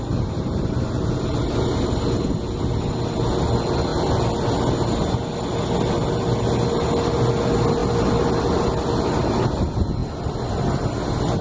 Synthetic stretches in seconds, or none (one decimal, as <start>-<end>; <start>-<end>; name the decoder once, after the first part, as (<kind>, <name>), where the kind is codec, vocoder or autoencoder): none